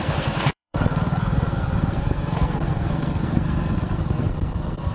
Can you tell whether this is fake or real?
fake